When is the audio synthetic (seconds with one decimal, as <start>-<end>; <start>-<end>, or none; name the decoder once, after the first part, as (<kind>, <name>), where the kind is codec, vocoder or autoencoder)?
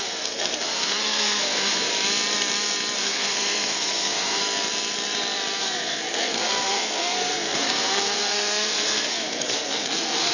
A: 0.0-1.9 (codec, SNAC); 3.0-4.4; 5.6-10.3